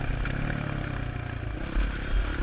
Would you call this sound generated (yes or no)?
no